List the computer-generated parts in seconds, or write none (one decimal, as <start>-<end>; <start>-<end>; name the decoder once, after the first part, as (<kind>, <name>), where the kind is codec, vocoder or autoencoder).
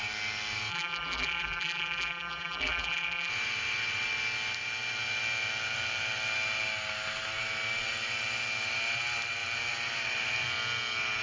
0.7-3.3 (vocoder, BigVGAN v2)